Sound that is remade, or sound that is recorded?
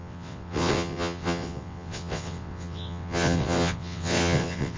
remade